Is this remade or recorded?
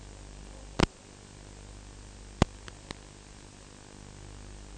recorded